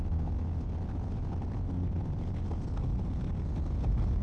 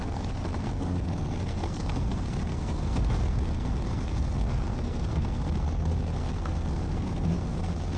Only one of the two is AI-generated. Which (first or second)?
second